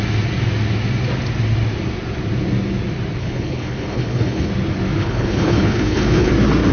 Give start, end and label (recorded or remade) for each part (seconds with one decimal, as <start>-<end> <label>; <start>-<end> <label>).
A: 0.0-3.2 recorded; 3.2-4.5 remade; 4.5-5.0 recorded; 5.0-6.3 remade; 6.3-6.7 recorded